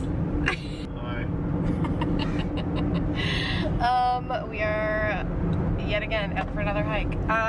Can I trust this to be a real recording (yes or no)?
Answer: yes